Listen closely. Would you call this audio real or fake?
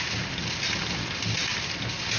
real